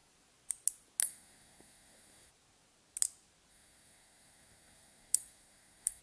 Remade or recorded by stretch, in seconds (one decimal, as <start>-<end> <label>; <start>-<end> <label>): 0.0-1.0 recorded; 1.0-2.3 remade; 2.3-3.5 recorded; 3.5-6.0 remade